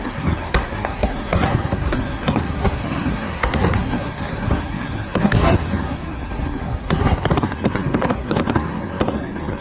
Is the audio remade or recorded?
remade